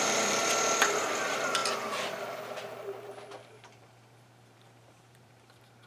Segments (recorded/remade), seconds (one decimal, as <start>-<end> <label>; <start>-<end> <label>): 0.0-0.4 remade; 0.4-1.0 recorded; 1.0-1.6 remade; 1.6-3.4 recorded; 3.4-5.9 remade